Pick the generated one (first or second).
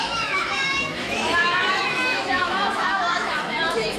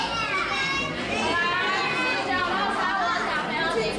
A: first